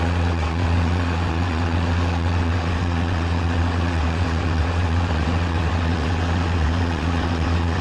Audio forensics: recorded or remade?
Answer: remade